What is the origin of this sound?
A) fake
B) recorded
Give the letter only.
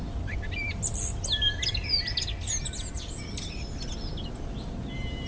B